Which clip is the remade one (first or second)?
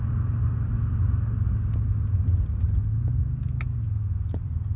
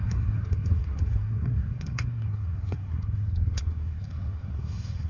second